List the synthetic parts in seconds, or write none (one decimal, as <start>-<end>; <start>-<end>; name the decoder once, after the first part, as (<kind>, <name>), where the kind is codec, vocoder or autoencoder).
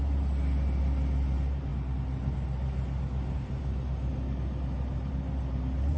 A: none